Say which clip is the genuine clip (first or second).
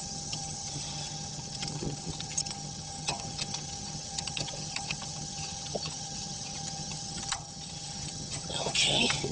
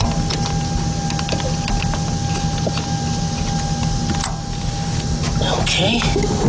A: second